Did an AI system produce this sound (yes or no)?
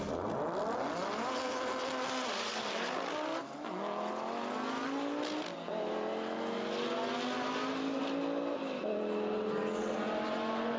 no